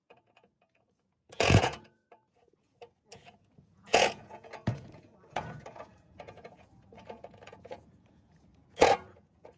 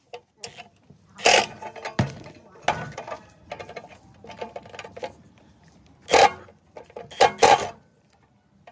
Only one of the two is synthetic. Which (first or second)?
first